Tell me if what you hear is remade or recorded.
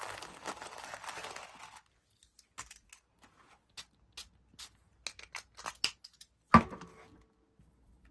recorded